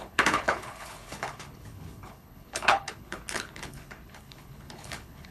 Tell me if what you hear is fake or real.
fake